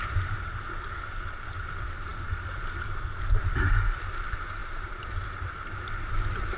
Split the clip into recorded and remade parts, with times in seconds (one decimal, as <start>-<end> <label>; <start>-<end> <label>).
0.0-6.6 recorded